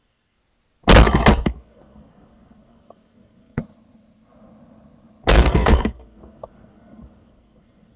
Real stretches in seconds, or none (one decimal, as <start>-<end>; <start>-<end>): 0.4-1.3; 3.6-5.3

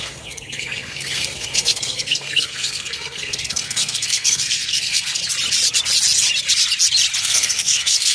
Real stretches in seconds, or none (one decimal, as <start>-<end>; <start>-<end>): 5.2-7.2

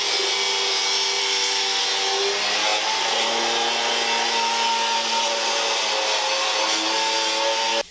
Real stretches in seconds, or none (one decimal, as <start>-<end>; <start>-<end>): 0.0-1.2; 1.8-7.9

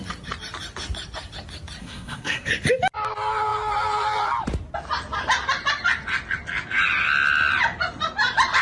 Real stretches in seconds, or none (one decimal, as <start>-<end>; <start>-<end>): 0.0-1.8; 2.5-8.6

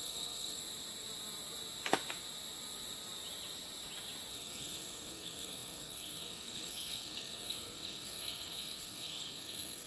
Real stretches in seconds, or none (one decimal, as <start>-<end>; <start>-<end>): 0.6-4.3

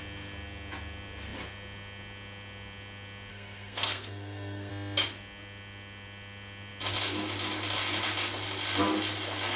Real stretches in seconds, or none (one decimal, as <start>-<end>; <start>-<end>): 0.0-3.3; 4.7-9.6